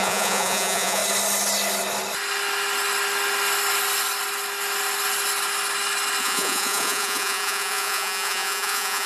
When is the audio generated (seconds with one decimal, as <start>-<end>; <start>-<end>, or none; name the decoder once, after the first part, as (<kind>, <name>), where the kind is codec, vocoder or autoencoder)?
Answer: 0.0-1.0 (vocoder, Vocos); 6.2-9.1